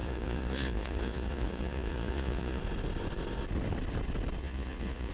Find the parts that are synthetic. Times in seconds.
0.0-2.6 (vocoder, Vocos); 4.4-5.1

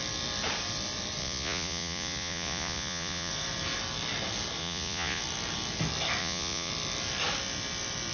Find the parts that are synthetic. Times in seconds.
1.2-3.3 (vocoder, Vocos); 4.6-5.2; 6.2-6.7

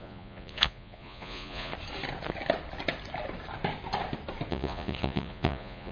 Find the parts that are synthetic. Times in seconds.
0.0-1.7 (vocoder, Vocos); 4.5-5.9

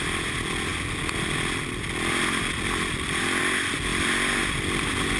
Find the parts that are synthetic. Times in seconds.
none

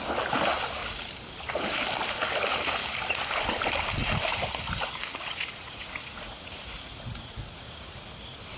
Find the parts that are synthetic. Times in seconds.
4.0-8.1 (vocoder, Vocos)

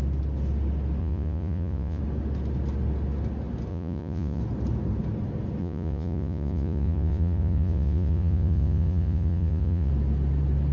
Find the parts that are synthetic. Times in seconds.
1.0-2.0 (vocoder, Vocos); 3.7-4.4; 5.6-9.9

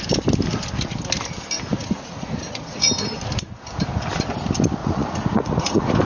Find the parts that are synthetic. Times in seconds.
1.7-3.2 (vocoder, Vocos); 4.8-6.0

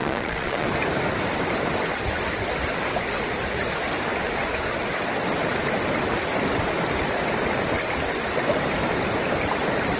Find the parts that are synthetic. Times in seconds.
0.0-0.7 (vocoder, Vocos)